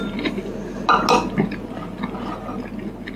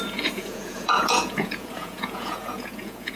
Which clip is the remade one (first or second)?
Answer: second